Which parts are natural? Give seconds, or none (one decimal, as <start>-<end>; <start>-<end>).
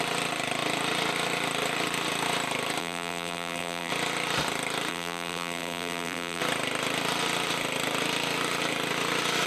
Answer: 0.0-2.8; 3.9-4.9; 6.4-9.5